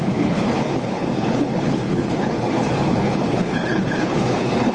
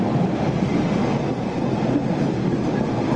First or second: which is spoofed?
first